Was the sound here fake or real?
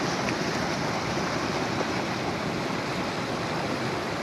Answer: real